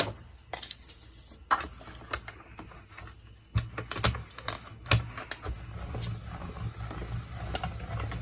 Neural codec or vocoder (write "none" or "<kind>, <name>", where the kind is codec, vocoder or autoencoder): none